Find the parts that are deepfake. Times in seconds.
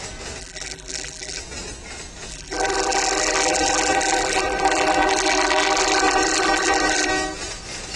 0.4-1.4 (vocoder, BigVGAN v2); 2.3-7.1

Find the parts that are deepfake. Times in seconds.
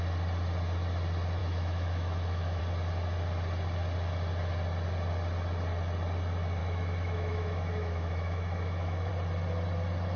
1.4-2.6 (autoencoder, DAC-VAE); 6.6-9.1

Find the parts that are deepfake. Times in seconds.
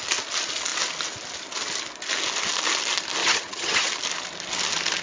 3.2-3.9 (vocoder, HiFi-GAN)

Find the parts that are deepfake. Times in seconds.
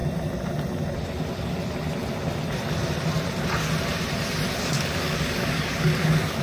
4.6-6.4 (codec, DAC)